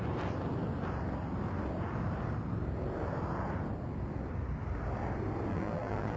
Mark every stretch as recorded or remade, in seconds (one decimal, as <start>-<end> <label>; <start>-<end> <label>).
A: 0.0-5.5 recorded; 5.5-6.2 remade